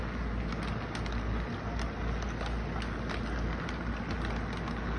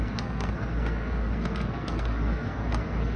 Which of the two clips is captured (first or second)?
first